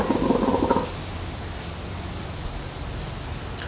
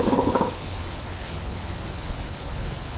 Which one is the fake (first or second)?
second